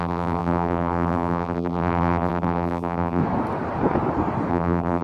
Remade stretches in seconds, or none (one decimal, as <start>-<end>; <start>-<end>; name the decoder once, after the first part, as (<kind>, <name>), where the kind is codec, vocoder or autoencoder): 0.0-3.2 (vocoder, BigVGAN v2); 4.5-5.0